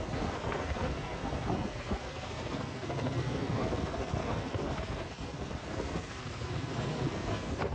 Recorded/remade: remade